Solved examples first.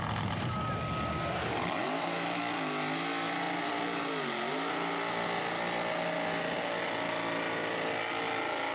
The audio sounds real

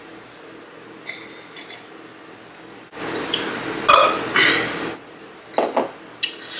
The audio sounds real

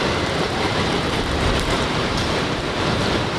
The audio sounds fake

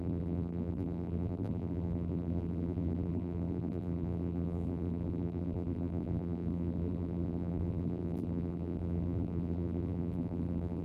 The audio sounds fake